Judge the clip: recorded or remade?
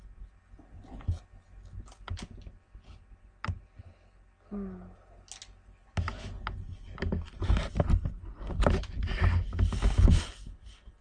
recorded